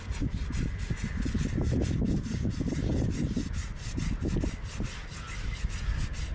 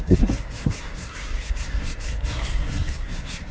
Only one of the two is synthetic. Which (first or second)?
second